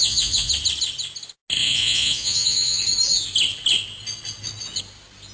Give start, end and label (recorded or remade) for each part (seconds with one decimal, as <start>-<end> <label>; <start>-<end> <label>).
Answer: 0.0-0.5 remade; 0.5-1.6 recorded; 1.6-2.8 remade; 2.8-5.3 recorded